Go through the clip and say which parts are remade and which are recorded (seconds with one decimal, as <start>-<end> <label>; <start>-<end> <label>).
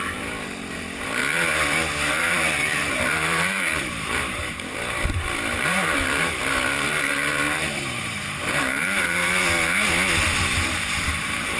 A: 0.0-1.2 remade; 1.2-2.1 recorded; 2.1-9.3 remade; 9.3-11.0 recorded; 11.0-11.6 remade